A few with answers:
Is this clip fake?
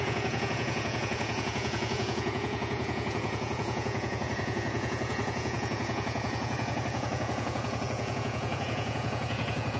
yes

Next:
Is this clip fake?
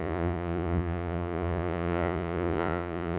yes